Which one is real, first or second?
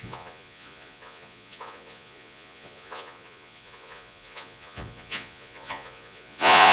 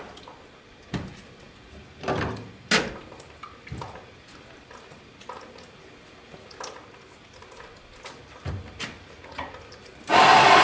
second